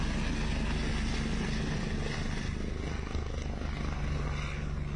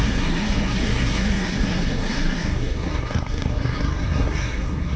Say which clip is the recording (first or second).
first